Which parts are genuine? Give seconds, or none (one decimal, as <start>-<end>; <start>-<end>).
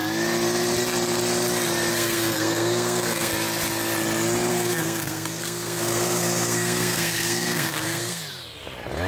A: 0.0-1.9; 3.3-4.5; 8.2-9.1